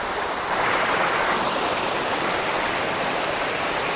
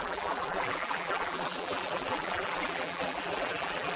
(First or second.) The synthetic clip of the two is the second